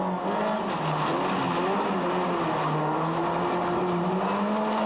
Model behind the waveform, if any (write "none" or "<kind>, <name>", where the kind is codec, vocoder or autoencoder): none